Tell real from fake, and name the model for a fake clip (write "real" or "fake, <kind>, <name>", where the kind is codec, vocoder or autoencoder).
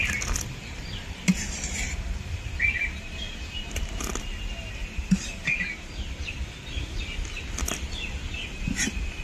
real